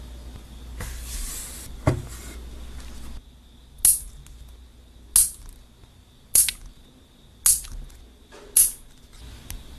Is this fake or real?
real